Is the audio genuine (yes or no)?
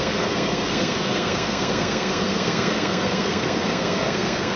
no